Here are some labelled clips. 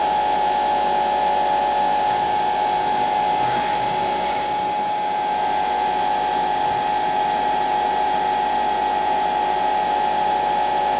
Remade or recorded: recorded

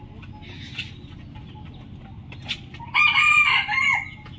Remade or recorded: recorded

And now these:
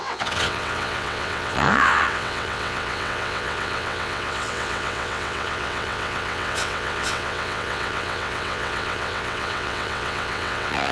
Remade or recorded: remade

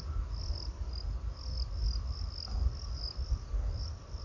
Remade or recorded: recorded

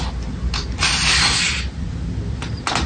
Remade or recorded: recorded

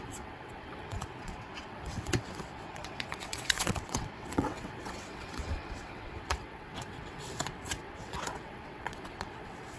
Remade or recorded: remade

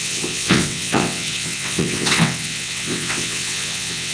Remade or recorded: remade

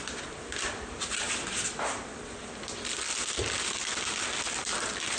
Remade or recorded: recorded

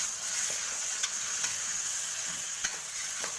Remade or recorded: remade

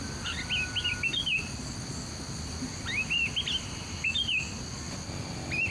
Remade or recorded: recorded